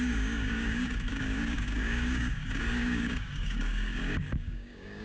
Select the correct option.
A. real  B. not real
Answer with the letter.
B